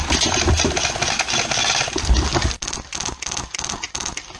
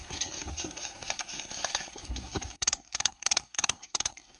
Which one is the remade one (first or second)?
second